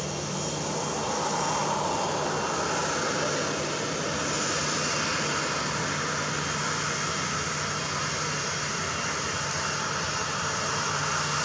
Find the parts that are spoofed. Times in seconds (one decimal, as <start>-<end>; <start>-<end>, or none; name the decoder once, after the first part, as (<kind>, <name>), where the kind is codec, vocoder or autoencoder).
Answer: none